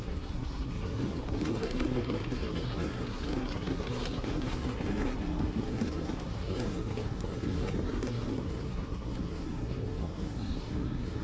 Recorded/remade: remade